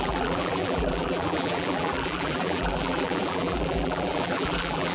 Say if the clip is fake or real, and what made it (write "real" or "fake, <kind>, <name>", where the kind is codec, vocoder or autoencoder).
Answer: fake, vocoder, BigVGAN v2